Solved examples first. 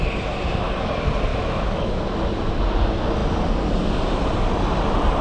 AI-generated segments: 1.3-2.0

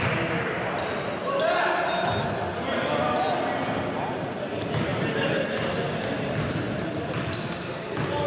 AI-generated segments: none

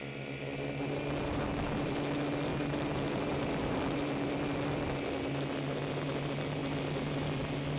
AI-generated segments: 2.5-4.3

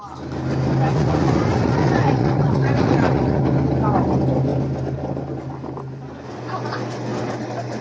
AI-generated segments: 0.9-3.4